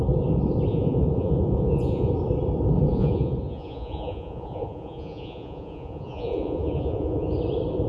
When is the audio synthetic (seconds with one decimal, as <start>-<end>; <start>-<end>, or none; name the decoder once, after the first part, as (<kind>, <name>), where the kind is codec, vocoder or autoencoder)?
0.7-2.1 (vocoder, Vocos); 2.9-7.3